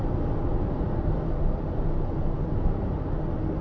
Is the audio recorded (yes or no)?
yes